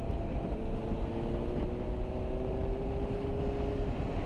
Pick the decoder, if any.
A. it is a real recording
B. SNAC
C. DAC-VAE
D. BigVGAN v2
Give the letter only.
A